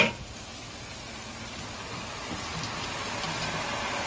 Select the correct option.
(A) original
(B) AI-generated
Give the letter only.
A